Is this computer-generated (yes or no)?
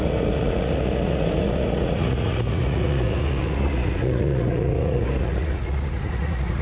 yes